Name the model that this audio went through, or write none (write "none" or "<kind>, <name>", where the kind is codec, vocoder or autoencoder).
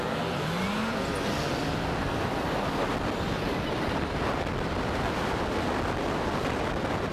none